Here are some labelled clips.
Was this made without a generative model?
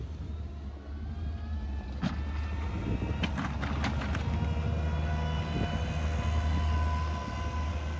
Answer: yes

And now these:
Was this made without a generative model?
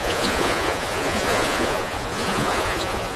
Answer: no